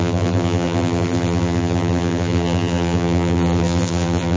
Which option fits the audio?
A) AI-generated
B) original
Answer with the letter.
A